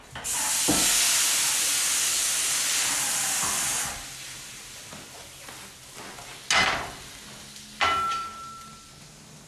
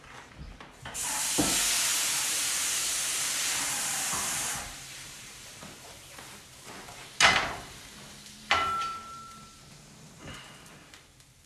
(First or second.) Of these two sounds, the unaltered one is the first